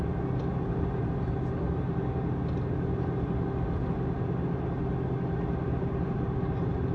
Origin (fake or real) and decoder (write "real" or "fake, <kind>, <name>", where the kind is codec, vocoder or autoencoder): real